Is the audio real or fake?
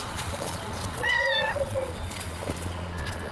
fake